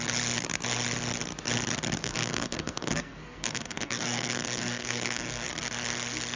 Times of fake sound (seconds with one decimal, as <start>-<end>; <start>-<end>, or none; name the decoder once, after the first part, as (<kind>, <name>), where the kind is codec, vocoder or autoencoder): 2.0-5.5 (codec, SNAC)